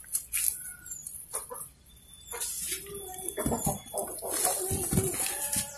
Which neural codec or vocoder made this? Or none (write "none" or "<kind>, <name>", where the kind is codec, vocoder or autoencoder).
vocoder, BigVGAN v2